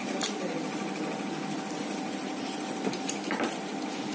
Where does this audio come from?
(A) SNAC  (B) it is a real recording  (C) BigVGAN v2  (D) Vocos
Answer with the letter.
B